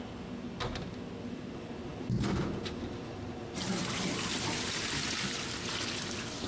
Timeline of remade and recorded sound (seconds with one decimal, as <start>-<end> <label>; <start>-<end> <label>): 0.0-1.9 recorded; 1.9-2.4 remade; 2.4-6.5 recorded